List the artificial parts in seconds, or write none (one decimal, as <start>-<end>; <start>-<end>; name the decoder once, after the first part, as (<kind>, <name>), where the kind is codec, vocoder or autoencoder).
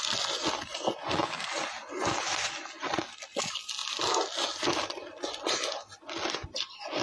none